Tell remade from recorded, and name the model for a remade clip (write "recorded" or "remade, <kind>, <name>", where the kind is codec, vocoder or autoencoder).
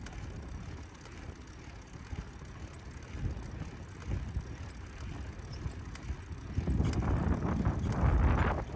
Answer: recorded